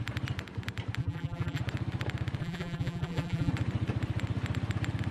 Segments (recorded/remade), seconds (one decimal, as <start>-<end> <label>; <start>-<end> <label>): 0.0-1.0 recorded; 1.0-1.6 remade; 1.6-2.4 recorded; 2.4-3.5 remade; 3.5-5.1 recorded